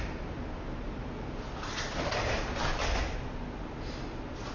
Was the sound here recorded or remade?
recorded